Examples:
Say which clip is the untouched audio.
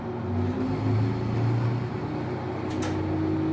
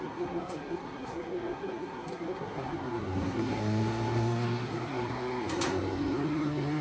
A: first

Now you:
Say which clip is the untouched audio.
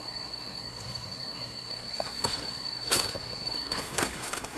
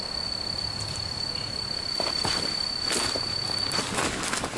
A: second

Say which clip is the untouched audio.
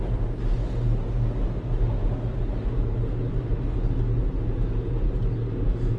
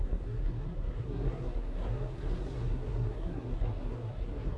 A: first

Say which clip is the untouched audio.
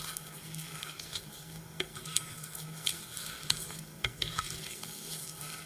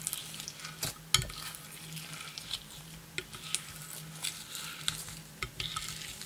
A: second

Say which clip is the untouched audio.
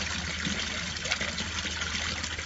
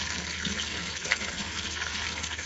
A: first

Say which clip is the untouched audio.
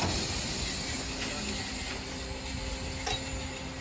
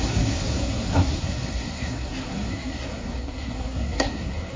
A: first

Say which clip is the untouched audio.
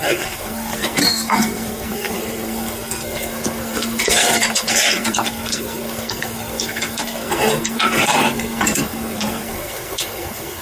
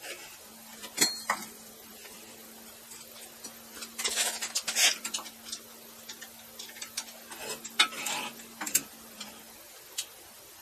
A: second